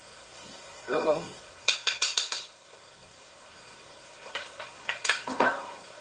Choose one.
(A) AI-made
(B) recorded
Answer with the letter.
A